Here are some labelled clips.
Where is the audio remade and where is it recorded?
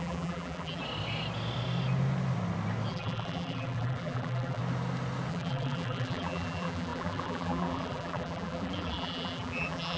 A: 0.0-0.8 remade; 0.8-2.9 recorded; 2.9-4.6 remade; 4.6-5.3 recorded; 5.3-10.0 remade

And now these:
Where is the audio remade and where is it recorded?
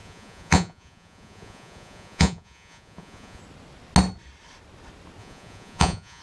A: 0.0-3.4 remade; 3.4-5.2 recorded; 5.2-6.2 remade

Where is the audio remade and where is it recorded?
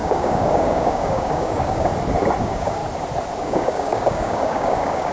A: 0.0-1.9 remade; 1.9-2.4 recorded; 2.4-2.8 remade; 2.8-3.4 recorded; 3.4-5.1 remade